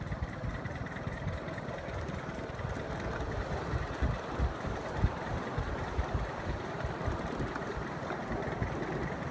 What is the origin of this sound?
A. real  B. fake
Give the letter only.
A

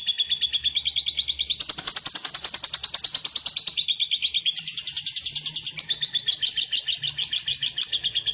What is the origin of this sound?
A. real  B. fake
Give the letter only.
A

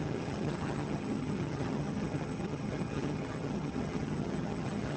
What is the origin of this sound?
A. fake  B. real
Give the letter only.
A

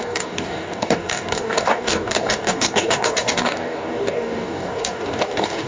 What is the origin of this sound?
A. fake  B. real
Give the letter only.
A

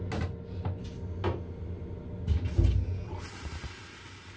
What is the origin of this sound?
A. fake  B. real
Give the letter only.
B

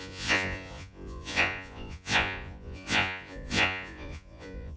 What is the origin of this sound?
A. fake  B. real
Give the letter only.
A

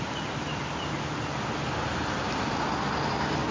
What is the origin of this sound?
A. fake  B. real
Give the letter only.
B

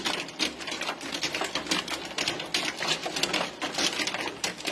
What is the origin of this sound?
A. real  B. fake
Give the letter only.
A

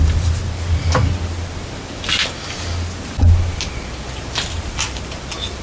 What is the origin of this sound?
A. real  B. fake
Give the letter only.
A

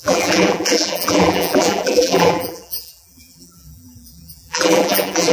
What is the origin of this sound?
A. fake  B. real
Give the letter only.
A